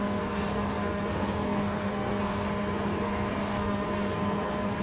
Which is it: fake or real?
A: fake